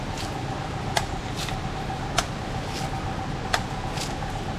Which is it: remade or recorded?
recorded